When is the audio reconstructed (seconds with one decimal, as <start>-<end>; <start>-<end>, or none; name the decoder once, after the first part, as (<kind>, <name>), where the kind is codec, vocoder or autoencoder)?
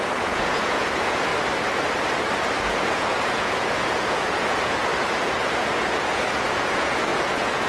0.0-1.3 (vocoder, Vocos); 2.6-4.9; 5.8-7.7